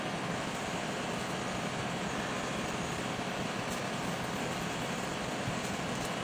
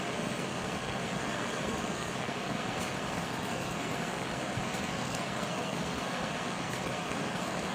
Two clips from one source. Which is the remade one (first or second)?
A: second